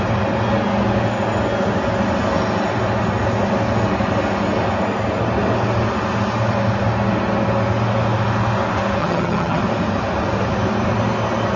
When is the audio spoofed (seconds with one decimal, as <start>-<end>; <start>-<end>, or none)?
9.0-9.6